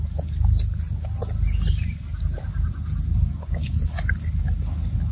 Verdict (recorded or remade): recorded